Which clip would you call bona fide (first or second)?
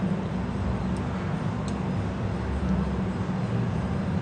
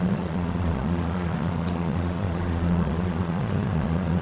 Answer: first